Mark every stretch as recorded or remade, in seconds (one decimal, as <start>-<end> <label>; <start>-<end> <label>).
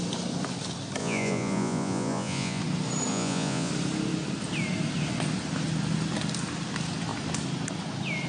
0.0-1.0 recorded; 1.0-2.6 remade; 2.6-3.1 recorded; 3.1-3.7 remade; 3.7-8.3 recorded